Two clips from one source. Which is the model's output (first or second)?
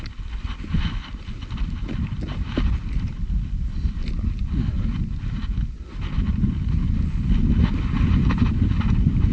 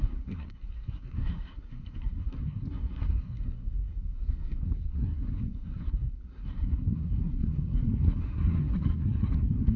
second